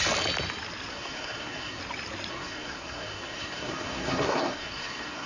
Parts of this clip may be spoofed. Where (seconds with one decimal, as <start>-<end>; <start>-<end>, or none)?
0.9-1.8; 2.3-5.3